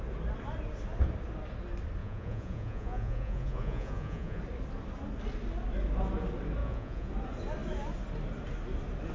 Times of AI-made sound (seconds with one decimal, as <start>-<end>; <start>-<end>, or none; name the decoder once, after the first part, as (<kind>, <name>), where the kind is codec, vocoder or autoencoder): 2.0-4.4 (vocoder, Vocos); 6.6-7.1